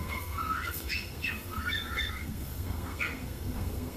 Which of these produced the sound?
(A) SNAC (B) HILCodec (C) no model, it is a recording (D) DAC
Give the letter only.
A